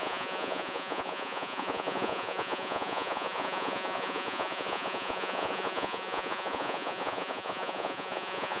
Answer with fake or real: fake